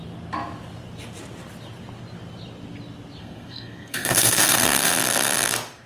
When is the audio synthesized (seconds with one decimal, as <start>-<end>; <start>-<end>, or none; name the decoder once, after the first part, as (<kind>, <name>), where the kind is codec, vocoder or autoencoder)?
3.2-4.9 (codec, SNAC)